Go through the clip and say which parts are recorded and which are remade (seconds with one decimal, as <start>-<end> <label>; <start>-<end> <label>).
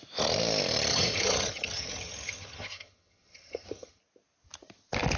0.0-0.9 recorded; 0.9-4.0 remade; 4.0-5.2 recorded